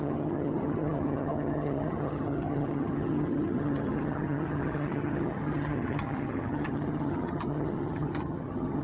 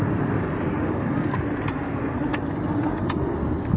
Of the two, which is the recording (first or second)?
second